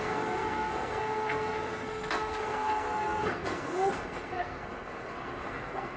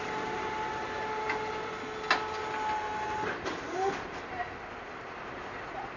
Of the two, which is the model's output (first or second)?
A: first